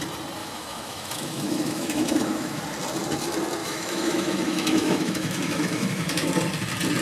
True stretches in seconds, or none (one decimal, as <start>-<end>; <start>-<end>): 0.0-0.4; 2.6-3.6; 6.3-7.0